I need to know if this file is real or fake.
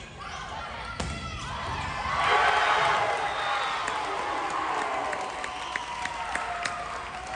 real